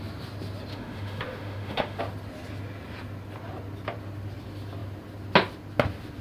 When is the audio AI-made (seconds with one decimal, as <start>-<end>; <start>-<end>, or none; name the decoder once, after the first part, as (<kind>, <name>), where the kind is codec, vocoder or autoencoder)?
0.7-2.0 (autoencoder, DAC-VAE)